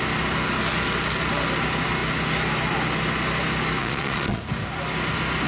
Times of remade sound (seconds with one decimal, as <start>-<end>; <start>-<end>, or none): 3.8-4.4